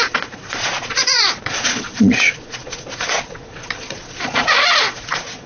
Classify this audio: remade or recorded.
remade